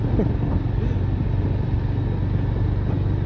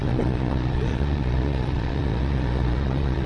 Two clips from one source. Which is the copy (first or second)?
second